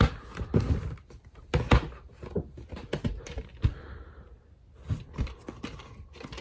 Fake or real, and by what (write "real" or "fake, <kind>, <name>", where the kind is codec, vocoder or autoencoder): real